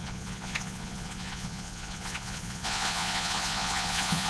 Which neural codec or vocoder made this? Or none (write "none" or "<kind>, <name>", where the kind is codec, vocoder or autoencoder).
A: vocoder, Vocos